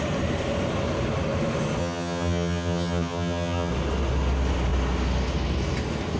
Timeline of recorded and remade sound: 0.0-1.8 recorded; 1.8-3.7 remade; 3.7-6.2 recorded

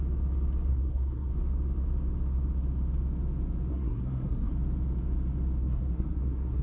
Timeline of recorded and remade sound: 0.0-0.7 recorded; 0.7-1.3 remade; 1.3-3.7 recorded; 3.7-4.5 remade; 4.5-5.6 recorded; 5.6-6.6 remade

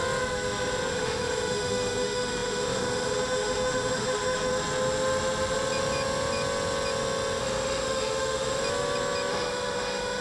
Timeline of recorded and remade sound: 0.0-0.9 recorded; 0.9-4.5 remade; 4.5-7.4 recorded; 7.4-8.6 remade; 8.6-9.3 recorded; 9.3-10.2 remade

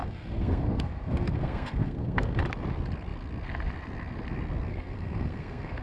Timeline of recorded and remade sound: 0.0-2.4 remade; 2.4-4.7 recorded; 4.7-5.8 remade

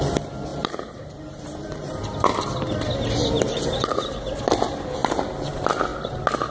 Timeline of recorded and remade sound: 0.0-0.5 recorded; 0.5-2.4 remade; 2.4-3.2 recorded; 3.2-4.0 remade; 4.0-6.5 recorded

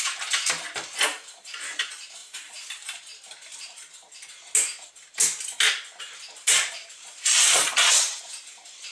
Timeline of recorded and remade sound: 0.0-7.5 recorded; 7.5-8.2 remade; 8.2-8.9 recorded